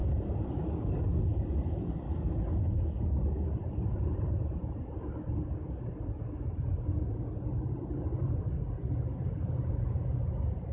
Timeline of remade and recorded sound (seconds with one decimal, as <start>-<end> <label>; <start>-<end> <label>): 0.0-3.6 recorded; 3.6-5.5 remade; 5.5-10.7 recorded